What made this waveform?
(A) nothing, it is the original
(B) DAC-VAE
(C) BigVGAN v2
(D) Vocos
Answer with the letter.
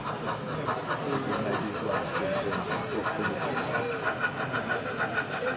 A